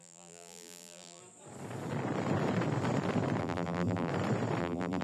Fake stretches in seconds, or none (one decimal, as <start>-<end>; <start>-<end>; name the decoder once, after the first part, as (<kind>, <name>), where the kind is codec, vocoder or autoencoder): 0.0-1.2 (vocoder, BigVGAN v2); 3.4-4.1; 4.6-5.0

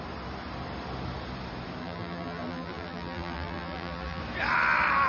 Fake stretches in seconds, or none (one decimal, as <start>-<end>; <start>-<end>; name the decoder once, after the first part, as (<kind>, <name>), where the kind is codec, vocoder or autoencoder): 1.8-4.2 (vocoder, BigVGAN v2)